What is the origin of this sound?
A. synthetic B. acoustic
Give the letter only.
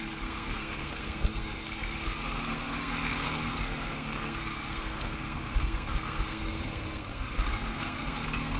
A